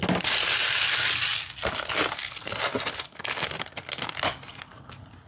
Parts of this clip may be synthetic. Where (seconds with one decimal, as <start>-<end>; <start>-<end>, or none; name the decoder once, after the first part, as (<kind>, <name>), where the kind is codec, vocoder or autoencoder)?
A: none